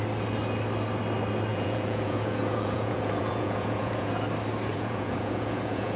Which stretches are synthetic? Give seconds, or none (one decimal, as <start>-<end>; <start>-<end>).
1.5-4.1; 4.7-6.0